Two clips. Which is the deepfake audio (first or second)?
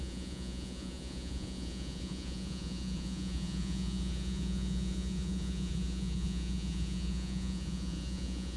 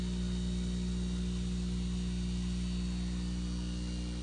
first